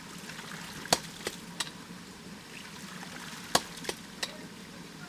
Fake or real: real